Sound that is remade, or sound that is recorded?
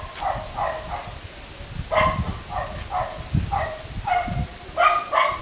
recorded